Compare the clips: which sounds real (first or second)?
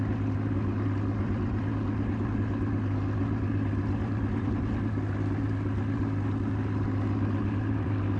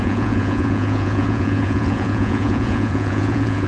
first